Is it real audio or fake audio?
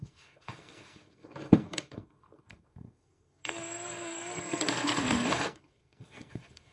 fake